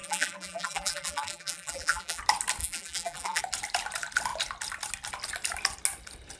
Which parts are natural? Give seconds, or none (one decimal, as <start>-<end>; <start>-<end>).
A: 2.2-2.6; 3.4-6.4